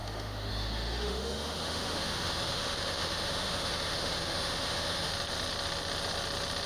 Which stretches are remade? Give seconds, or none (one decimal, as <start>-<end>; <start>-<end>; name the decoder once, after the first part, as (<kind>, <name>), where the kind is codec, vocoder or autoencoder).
0.0-5.1 (autoencoder, DAC-VAE)